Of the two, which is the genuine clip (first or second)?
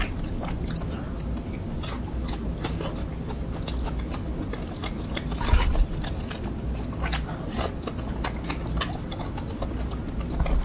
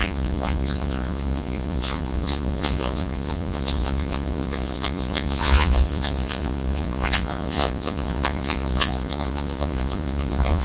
first